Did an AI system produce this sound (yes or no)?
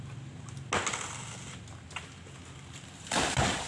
no